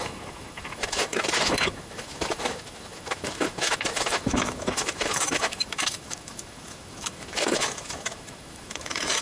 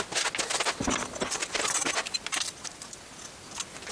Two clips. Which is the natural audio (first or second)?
second